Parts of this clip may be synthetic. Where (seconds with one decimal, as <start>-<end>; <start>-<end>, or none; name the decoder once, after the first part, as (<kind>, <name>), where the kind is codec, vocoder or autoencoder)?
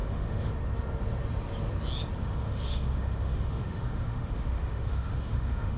0.0-0.5 (autoencoder, DAC-VAE); 2.2-5.8